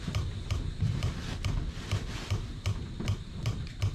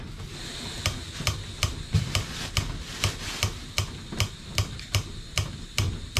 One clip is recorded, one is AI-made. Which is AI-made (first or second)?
first